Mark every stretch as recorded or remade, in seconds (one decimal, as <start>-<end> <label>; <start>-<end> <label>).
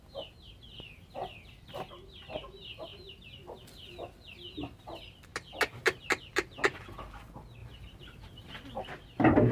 0.0-9.5 recorded